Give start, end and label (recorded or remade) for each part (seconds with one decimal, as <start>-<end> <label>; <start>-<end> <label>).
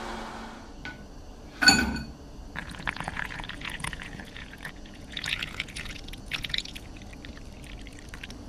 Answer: 0.0-2.6 recorded; 2.6-7.0 remade; 7.0-8.5 recorded